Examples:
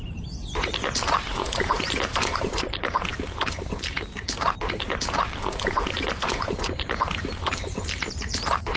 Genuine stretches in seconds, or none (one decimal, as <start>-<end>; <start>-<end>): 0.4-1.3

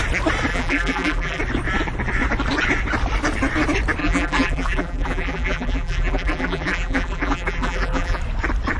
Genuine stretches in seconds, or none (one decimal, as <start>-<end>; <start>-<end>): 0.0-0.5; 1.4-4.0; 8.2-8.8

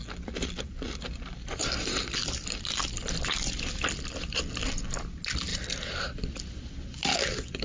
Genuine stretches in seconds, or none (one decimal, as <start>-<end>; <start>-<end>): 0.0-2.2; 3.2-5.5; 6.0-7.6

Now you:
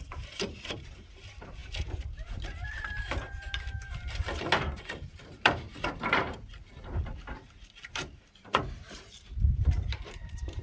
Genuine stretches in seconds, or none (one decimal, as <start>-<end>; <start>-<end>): none

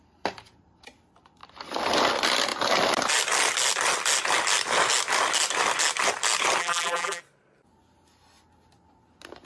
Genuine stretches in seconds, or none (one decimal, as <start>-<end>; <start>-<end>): 0.0-6.6; 7.2-9.5